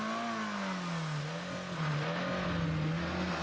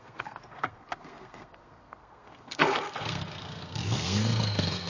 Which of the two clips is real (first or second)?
first